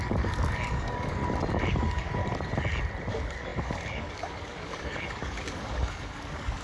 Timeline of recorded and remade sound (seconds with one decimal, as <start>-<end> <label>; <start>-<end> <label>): 0.0-1.2 remade; 1.2-1.7 recorded; 1.7-2.2 remade; 2.2-3.1 recorded; 3.1-6.6 remade